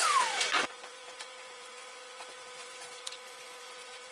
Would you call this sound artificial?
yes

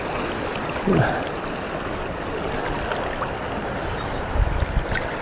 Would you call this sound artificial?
no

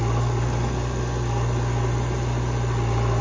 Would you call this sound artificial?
no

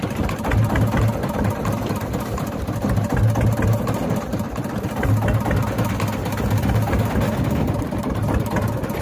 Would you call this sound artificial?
no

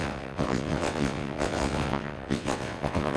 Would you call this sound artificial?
yes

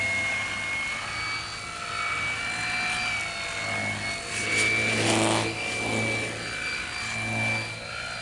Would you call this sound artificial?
no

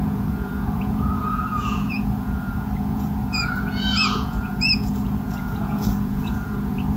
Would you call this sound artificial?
yes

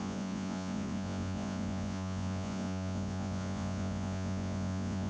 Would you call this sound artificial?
yes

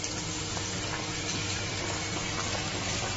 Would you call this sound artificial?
no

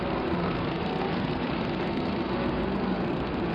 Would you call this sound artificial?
yes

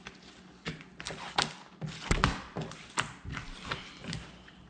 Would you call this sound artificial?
no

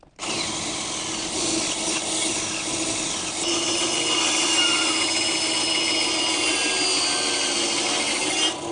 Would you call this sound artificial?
no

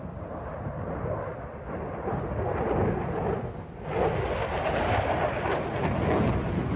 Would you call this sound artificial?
no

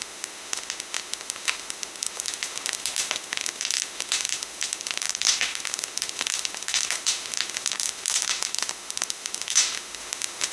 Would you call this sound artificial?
yes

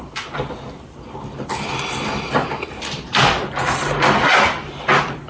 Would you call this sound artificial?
no